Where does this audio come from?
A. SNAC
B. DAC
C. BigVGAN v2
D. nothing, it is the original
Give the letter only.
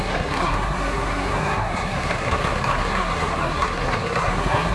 A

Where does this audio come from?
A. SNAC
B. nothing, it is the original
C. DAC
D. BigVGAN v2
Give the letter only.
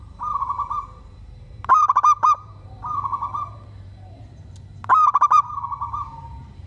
D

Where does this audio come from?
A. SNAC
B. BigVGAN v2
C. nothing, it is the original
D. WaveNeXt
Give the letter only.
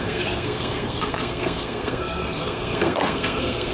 A